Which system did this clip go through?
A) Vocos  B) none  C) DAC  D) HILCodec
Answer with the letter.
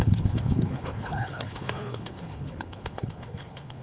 D